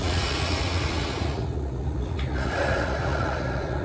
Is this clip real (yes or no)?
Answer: no